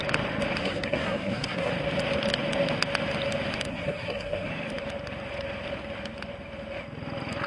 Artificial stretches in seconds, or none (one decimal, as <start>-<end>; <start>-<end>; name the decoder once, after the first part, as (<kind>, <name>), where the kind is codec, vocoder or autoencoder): 0.6-1.7 (codec, SNAC); 3.7-4.5